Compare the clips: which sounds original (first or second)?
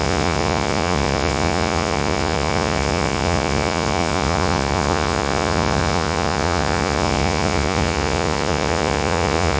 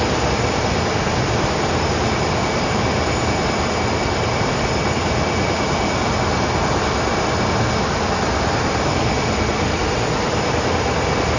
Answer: second